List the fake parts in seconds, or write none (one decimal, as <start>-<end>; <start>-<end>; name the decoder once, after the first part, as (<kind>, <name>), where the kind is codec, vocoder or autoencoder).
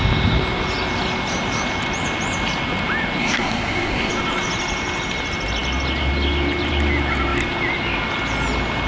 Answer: 3.2-4.1 (codec, SNAC)